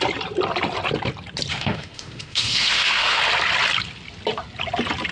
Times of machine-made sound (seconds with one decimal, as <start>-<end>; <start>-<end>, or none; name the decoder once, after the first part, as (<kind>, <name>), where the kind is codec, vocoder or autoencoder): 1.5-3.2 (autoencoder, DAC-VAE)